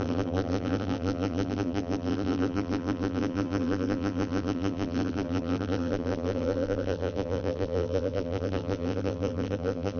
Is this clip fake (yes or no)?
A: yes